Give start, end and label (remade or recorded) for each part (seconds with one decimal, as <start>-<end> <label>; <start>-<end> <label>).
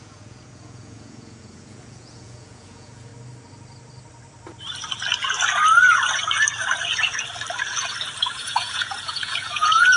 0.0-3.1 remade; 3.1-8.2 recorded; 8.2-10.0 remade